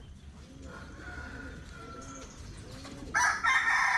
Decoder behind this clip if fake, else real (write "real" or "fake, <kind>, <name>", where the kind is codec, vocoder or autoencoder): real